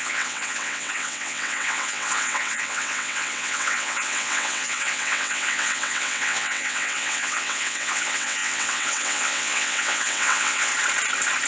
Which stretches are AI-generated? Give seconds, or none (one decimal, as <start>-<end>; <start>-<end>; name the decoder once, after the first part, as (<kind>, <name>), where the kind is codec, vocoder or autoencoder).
0.0-10.7 (vocoder, WaveNeXt)

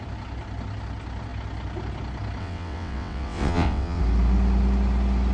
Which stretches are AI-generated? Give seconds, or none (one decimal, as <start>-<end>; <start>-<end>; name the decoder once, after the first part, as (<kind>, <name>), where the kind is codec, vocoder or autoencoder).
2.4-4.0 (vocoder, WaveNeXt)

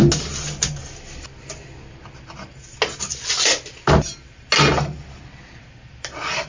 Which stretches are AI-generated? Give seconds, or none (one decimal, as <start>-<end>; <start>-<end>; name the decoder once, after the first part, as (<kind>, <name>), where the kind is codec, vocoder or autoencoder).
none

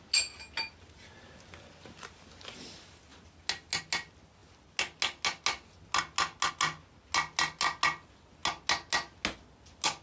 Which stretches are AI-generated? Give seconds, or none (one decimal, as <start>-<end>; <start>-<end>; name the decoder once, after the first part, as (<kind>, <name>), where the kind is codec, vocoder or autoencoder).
none

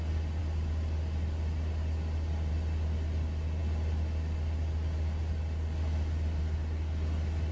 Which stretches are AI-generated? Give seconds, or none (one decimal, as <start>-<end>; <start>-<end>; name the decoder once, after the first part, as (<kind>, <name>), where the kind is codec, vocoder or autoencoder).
none

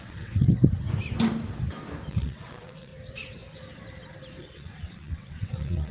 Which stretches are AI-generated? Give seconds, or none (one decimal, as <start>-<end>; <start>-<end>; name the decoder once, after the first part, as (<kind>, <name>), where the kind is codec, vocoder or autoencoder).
0.0-0.6 (vocoder, WaveNeXt); 2.1-2.9; 4.4-5.9